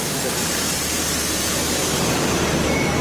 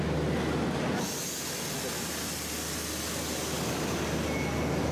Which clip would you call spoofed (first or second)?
first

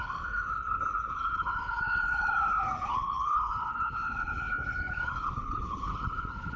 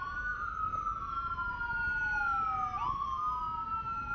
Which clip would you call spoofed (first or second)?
first